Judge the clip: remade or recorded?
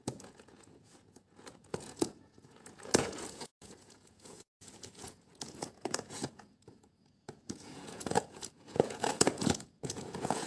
remade